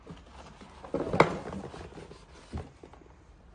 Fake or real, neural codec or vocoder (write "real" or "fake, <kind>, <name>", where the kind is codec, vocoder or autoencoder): real